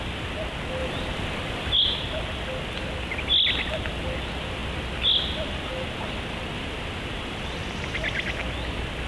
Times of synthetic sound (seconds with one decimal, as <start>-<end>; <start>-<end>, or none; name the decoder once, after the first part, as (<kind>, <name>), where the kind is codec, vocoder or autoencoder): none